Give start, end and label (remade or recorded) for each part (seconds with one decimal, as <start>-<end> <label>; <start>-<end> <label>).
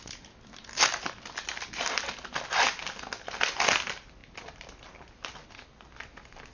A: 0.0-6.5 recorded